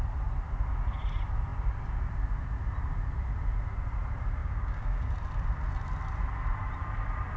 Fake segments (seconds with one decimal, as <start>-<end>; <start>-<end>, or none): 4.4-5.1